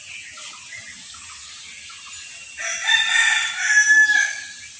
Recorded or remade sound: recorded